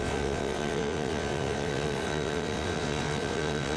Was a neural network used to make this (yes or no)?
yes